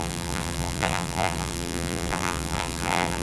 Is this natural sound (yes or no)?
no